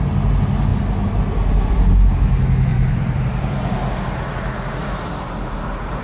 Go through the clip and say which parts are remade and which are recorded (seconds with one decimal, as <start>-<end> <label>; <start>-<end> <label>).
0.0-2.7 recorded; 2.7-3.9 remade; 3.9-4.8 recorded; 4.8-6.0 remade

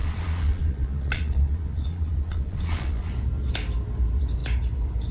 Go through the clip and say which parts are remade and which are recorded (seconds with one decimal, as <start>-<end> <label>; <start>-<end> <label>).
0.0-3.1 remade; 3.1-5.1 recorded